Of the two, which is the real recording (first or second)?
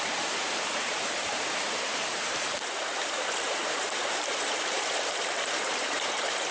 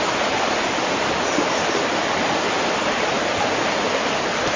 second